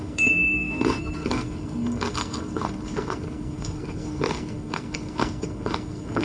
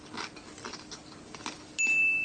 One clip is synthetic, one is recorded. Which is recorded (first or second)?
second